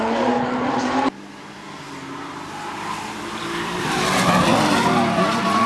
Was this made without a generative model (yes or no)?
yes